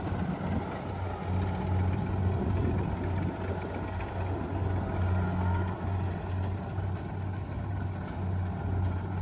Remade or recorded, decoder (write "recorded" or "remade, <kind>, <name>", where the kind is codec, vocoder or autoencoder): recorded